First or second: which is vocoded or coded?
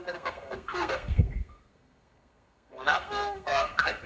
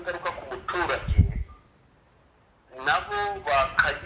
first